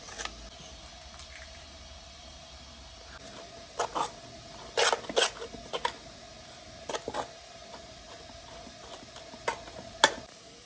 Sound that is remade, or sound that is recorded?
recorded